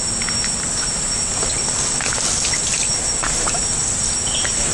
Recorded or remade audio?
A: recorded